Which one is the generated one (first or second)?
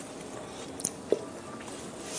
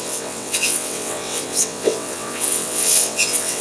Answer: second